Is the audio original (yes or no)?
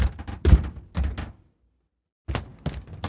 yes